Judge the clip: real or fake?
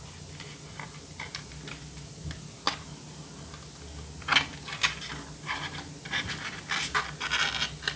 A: real